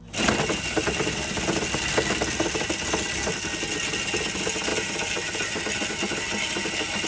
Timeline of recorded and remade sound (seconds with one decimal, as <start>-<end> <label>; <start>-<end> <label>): 0.0-7.1 recorded